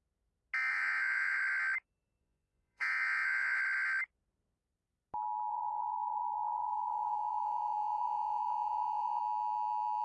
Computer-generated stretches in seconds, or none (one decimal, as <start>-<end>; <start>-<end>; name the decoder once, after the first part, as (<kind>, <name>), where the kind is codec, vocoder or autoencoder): 0.7-1.4 (vocoder, Vocos); 2.2-3.6; 5.5-9.2